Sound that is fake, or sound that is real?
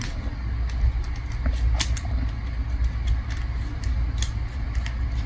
real